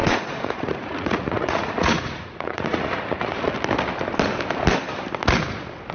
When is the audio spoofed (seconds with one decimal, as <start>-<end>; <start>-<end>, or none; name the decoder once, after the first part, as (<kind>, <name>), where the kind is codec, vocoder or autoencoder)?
0.0-3.5 (vocoder, Vocos)